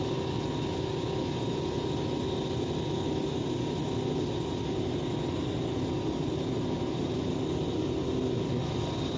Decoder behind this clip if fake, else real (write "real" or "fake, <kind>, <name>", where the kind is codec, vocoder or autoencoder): real